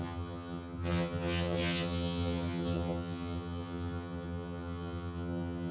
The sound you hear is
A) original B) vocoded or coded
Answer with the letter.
B